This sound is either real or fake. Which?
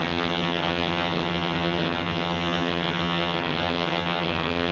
fake